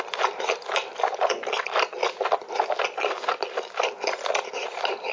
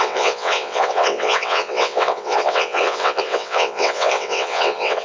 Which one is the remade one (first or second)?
second